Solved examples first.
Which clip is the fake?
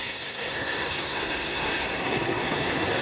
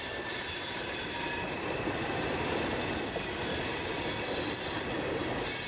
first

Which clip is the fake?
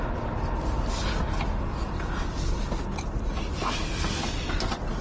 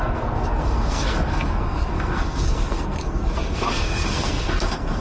second